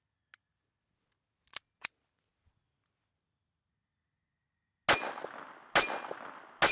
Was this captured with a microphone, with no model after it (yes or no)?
yes